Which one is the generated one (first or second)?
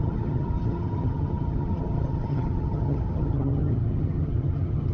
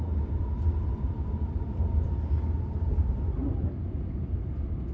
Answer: first